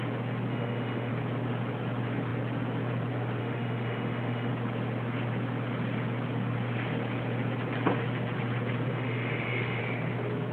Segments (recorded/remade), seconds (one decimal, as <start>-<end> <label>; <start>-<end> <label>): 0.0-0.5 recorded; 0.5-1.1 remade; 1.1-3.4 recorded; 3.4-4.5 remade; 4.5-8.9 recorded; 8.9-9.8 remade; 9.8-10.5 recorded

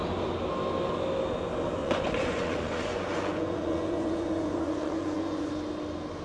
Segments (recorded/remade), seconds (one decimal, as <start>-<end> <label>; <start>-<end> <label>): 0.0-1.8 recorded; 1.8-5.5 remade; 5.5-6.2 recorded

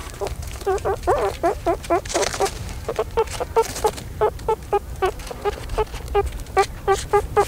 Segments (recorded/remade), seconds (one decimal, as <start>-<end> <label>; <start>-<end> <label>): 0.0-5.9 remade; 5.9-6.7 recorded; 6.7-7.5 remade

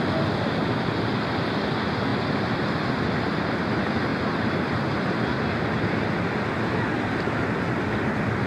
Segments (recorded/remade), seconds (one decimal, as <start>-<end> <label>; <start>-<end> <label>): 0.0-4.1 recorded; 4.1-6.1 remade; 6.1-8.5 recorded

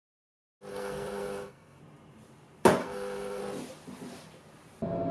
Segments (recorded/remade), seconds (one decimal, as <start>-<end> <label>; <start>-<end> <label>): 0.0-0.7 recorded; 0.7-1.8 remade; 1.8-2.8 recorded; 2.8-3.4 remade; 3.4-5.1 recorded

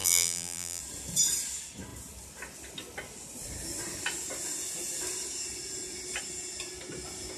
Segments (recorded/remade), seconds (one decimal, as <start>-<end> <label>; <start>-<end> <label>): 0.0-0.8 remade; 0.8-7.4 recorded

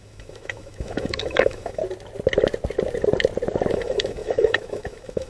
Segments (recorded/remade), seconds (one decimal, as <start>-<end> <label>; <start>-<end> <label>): 0.0-1.8 remade; 1.8-3.7 recorded; 3.7-5.3 remade

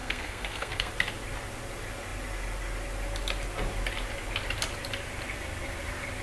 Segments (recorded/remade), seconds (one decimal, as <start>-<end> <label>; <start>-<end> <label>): 0.0-0.9 remade; 0.9-6.2 recorded